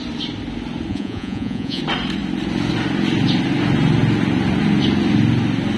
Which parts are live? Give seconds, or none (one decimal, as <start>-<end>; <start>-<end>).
0.0-0.9; 1.8-5.8